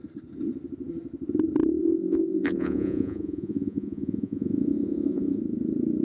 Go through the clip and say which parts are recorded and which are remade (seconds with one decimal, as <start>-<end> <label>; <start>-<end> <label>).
0.0-1.8 recorded; 1.8-5.4 remade; 5.4-6.0 recorded